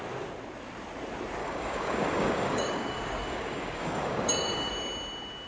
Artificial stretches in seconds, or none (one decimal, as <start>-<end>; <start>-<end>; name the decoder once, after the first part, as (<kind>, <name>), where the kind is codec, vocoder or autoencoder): 1.4-4.7 (codec, DAC)